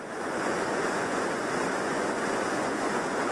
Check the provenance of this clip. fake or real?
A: fake